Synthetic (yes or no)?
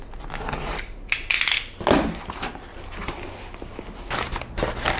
no